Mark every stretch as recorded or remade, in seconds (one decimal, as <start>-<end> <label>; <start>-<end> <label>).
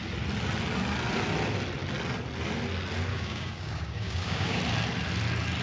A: 0.0-3.1 recorded; 3.1-4.6 remade; 4.6-5.6 recorded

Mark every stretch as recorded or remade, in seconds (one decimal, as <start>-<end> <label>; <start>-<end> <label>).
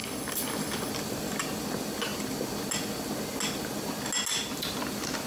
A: 0.0-0.9 remade; 0.9-5.3 recorded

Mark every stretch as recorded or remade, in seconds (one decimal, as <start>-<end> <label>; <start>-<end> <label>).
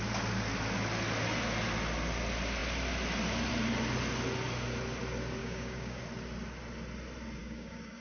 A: 0.0-5.4 recorded; 5.4-6.0 remade; 6.0-7.4 recorded; 7.4-8.0 remade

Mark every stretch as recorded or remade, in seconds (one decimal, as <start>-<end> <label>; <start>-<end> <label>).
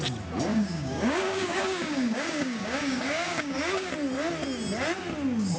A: 0.0-0.5 recorded; 0.5-3.9 remade; 3.9-5.6 recorded